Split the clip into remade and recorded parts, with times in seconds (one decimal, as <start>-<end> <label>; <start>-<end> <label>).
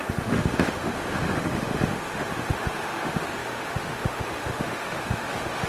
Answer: 0.0-5.7 remade